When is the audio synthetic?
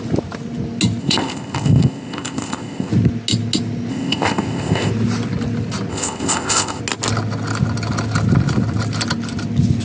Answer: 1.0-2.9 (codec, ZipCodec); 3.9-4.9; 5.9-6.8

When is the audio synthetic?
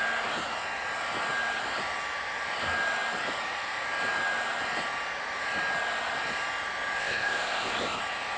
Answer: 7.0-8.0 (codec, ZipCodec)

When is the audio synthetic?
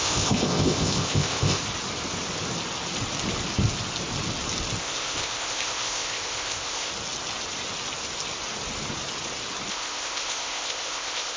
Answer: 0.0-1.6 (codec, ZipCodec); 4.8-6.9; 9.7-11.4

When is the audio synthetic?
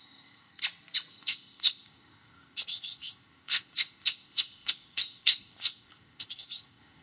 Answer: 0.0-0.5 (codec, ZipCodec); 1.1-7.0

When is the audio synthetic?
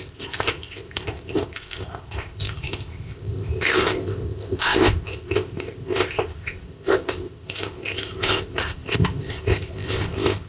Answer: 0.0-10.5 (codec, ZipCodec)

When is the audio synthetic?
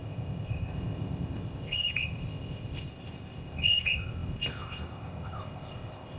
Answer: 0.0-6.2 (codec, ZipCodec)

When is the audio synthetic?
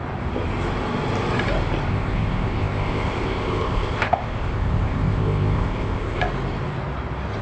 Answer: 1.9-6.2 (codec, ZipCodec)